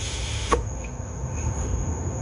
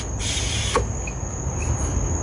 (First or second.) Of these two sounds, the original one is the second